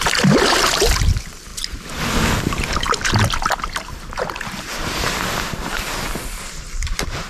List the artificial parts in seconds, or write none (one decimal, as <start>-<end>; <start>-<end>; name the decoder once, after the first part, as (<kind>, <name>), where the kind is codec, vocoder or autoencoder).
0.0-1.5 (vocoder, BigVGAN v2); 2.4-7.3